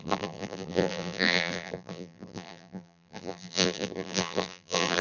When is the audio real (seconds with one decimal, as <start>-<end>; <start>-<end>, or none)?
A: none